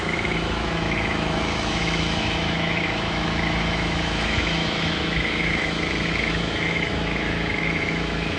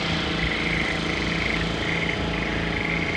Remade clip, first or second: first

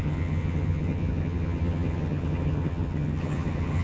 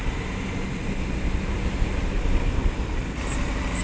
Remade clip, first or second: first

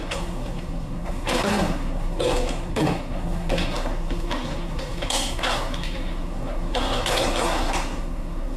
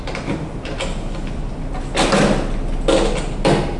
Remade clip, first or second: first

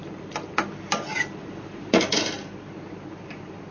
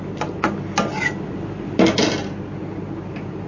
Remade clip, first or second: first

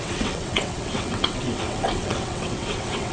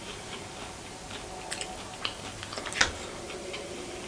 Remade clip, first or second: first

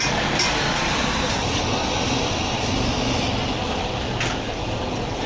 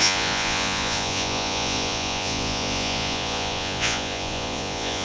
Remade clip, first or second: second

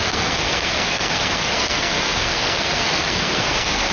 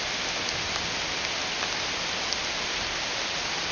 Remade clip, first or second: first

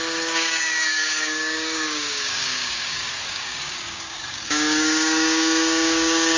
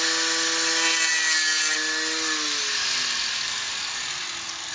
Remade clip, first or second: first